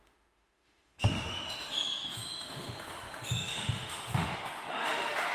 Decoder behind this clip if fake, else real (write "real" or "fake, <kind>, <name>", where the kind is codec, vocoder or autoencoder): fake, autoencoder, DAC-VAE